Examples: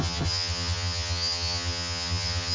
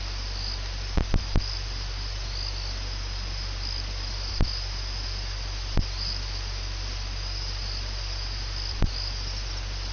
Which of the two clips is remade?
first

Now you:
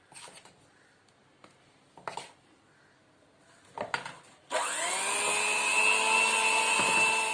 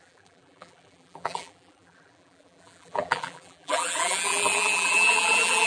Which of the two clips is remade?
second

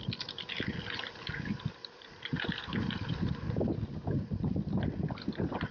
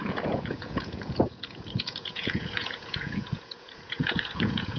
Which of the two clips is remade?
second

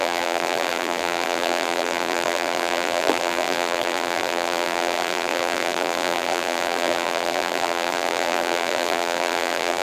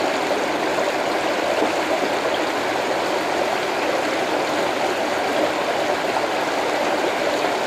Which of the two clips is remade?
first